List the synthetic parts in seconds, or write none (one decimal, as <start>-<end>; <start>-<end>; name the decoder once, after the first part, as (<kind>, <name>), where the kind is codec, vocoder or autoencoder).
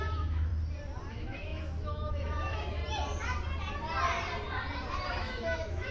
0.0-0.5 (autoencoder, DAC-VAE); 1.1-2.8; 5.2-5.9